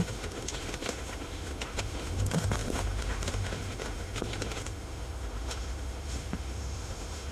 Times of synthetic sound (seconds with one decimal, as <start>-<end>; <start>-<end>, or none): 0.0-7.3